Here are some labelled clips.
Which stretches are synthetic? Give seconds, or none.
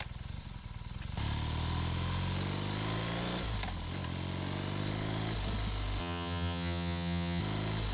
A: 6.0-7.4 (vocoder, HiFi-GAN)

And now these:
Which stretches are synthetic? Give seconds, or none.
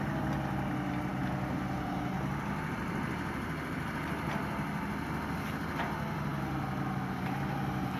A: none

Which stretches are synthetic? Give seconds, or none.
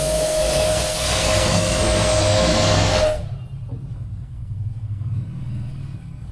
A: 0.0-3.2 (codec, SNAC); 3.9-6.3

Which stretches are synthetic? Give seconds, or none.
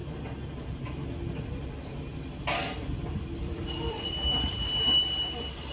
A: 3.4-5.7 (vocoder, BigVGAN v2)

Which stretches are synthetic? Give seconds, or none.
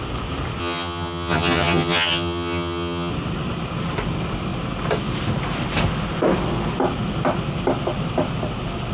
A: 0.6-3.1 (vocoder, HiFi-GAN)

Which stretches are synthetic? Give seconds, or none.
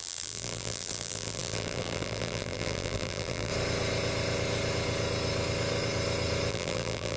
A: 0.0-3.5 (vocoder, BigVGAN v2); 6.5-7.2